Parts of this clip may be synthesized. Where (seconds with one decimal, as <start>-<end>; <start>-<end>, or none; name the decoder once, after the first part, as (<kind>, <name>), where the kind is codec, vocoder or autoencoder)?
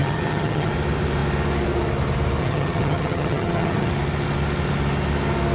0.0-0.7 (vocoder, HiFi-GAN); 2.4-3.9